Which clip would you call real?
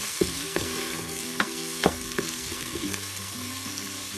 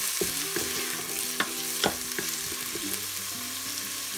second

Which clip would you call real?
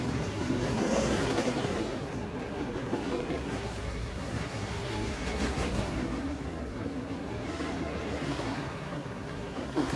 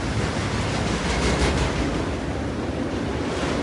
second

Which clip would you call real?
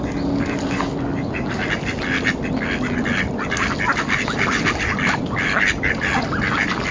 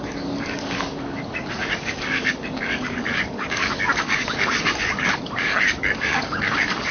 first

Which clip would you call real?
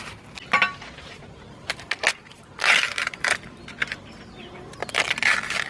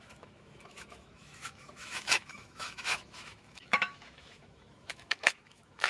first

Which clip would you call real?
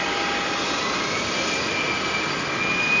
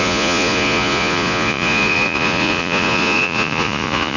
first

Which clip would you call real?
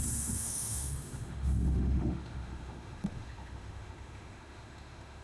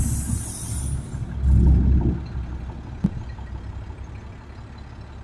second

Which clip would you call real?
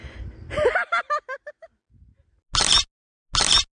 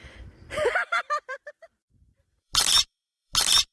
first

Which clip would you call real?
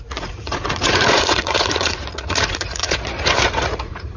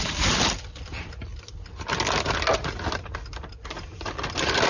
second